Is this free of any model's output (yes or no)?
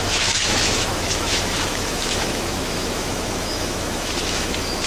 no